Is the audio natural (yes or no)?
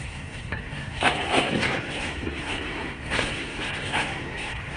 no